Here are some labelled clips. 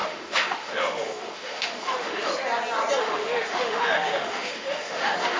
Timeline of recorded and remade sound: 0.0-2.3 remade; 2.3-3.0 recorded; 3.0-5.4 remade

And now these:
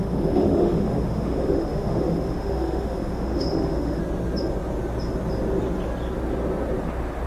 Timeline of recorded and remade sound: 0.0-4.0 remade; 4.0-7.3 recorded

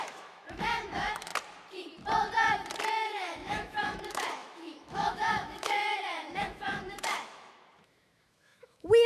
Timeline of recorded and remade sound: 0.0-1.3 remade; 1.3-2.9 recorded; 2.9-9.1 remade

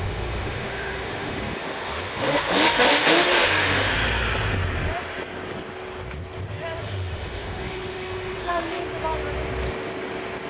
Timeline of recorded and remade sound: 0.0-3.9 remade; 3.9-6.8 recorded; 6.8-8.8 remade; 8.8-10.5 recorded

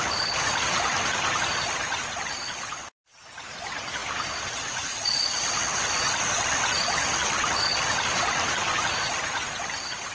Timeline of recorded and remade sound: 0.0-10.1 recorded

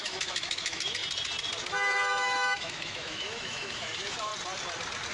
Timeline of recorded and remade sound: 0.0-1.0 remade; 1.0-1.7 recorded; 1.7-4.3 remade; 4.3-5.1 recorded

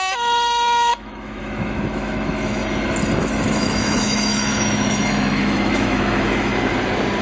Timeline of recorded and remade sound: 0.0-2.6 remade; 2.6-3.2 recorded; 3.2-6.5 remade; 6.5-7.2 recorded